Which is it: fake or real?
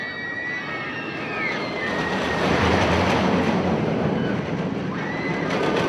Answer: real